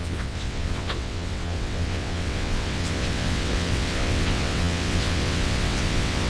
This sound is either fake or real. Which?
fake